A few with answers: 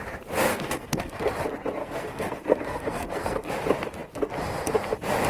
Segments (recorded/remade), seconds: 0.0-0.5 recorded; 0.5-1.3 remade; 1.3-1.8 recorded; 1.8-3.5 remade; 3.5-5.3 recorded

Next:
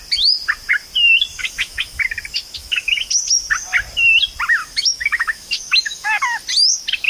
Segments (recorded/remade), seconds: 0.0-1.4 recorded; 1.4-2.0 remade; 2.0-2.6 recorded; 2.6-3.1 remade; 3.1-4.6 recorded; 4.6-6.2 remade; 6.2-7.1 recorded